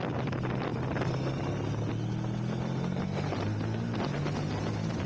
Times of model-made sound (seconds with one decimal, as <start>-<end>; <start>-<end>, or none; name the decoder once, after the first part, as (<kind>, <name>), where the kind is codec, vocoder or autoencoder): none